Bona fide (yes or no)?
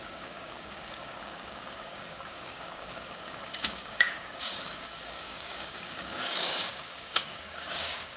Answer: no